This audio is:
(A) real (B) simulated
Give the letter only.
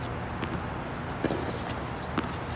A